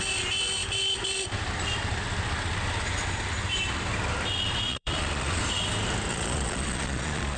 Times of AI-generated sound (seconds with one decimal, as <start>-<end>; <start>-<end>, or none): 4.7-5.4; 6.1-7.4